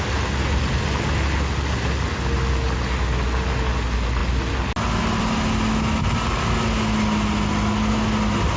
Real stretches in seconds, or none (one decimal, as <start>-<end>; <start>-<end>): 0.0-8.6